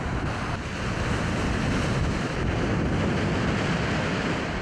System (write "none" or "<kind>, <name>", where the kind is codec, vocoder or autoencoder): none